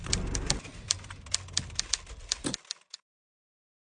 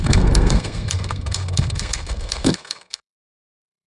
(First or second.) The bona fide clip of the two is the first